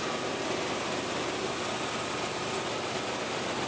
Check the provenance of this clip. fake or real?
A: real